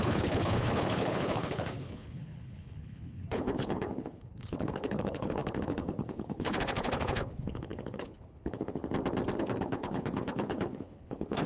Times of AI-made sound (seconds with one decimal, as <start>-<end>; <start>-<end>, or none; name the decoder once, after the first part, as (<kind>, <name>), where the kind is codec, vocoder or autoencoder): 0.0-8.8 (codec, HILCodec); 9.4-11.5